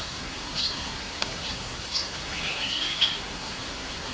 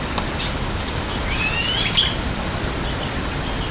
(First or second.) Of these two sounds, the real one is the second